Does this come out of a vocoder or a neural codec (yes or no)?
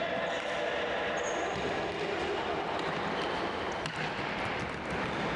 no